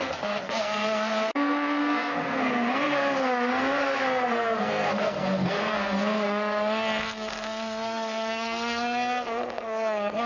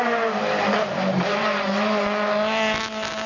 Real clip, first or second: second